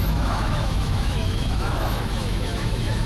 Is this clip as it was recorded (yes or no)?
no